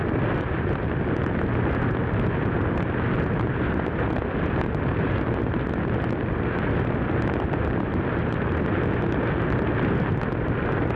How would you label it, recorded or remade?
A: recorded